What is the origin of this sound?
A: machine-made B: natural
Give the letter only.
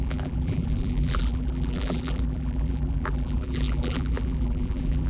A